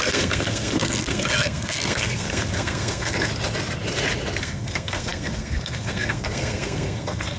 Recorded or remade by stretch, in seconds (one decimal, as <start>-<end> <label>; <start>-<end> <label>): 0.0-3.3 remade; 3.3-4.4 recorded; 4.4-7.4 remade